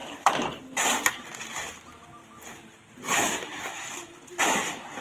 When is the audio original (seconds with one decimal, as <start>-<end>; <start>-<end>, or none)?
0.6-2.2; 3.9-5.0